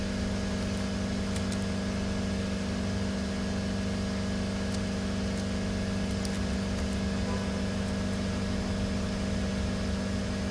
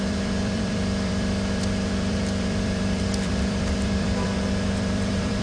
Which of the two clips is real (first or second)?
first